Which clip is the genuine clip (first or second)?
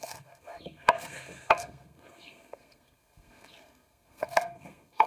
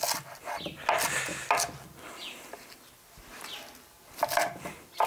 second